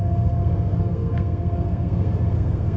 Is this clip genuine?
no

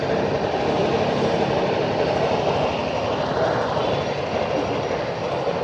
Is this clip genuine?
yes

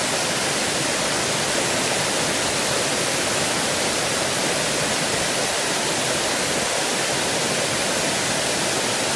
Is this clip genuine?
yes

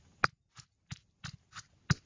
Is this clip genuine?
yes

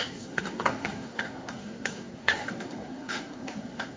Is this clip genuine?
no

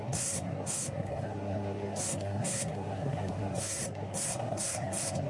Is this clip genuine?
no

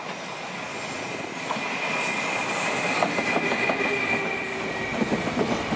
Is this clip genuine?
yes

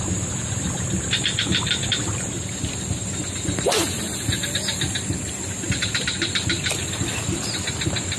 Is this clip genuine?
yes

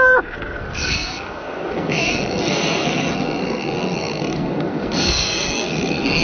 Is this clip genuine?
no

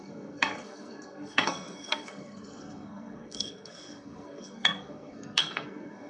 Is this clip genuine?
no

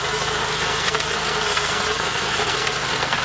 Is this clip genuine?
no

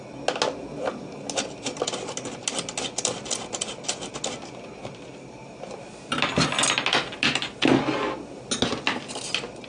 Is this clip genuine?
yes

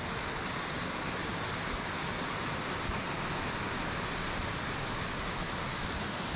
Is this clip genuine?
yes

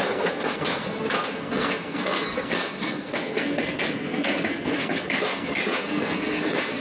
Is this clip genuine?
no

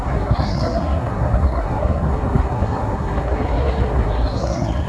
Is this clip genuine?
no